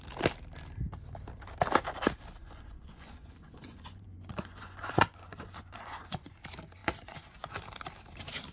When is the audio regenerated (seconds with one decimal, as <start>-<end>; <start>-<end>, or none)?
2.4-6.3; 6.8-7.5